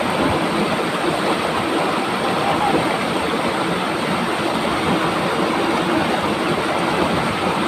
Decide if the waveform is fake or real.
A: real